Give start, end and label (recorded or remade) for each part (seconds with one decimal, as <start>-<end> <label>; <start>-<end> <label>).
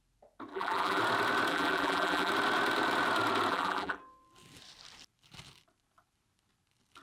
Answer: 0.0-0.5 recorded; 0.5-1.0 remade; 1.0-1.5 recorded; 1.5-2.3 remade; 2.3-3.5 recorded; 3.5-4.0 remade; 4.0-7.0 recorded